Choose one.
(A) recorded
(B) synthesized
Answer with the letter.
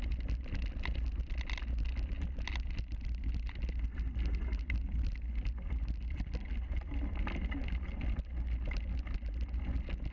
A